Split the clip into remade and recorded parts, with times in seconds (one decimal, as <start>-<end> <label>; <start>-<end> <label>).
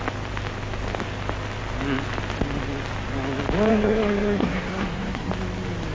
0.0-3.7 recorded; 3.7-5.3 remade; 5.3-5.9 recorded